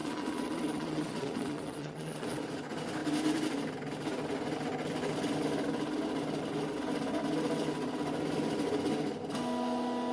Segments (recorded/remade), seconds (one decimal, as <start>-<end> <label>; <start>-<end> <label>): 0.0-2.4 remade; 2.4-10.1 recorded